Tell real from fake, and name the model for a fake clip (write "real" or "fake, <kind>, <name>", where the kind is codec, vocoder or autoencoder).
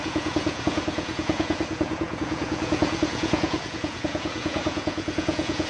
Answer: fake, vocoder, Vocos